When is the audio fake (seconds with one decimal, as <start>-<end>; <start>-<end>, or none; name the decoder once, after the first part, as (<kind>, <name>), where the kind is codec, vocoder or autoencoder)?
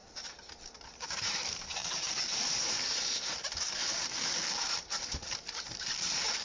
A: 0.0-6.4 (vocoder, BigVGAN v2)